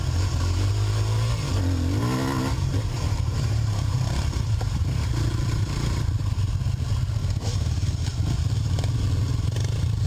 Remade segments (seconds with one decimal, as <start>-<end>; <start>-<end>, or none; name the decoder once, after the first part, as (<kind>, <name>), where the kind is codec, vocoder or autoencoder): 2.7-6.5 (vocoder, BigVGAN v2)